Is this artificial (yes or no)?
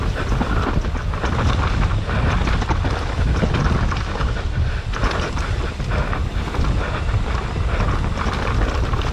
no